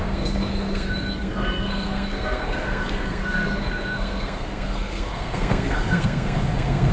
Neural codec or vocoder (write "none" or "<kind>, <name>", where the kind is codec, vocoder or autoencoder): codec, SNAC